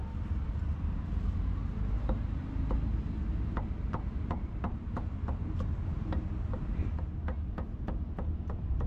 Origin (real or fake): real